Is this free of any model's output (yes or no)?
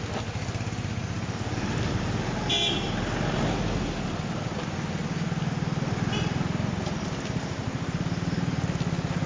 yes